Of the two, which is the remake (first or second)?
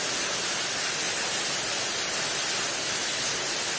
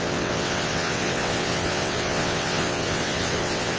second